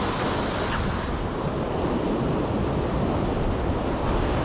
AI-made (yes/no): no